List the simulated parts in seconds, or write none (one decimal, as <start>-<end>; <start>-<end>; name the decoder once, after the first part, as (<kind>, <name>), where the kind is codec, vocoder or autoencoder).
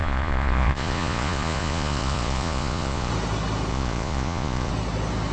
0.0-3.1 (vocoder, Vocos); 3.7-4.7